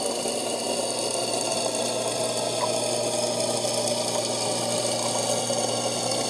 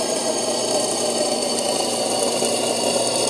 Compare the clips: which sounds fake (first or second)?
second